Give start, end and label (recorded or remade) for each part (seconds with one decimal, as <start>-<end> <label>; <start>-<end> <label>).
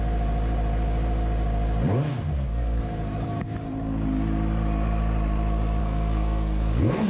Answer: 0.0-2.1 recorded; 2.1-2.8 remade; 2.8-5.8 recorded; 5.8-7.1 remade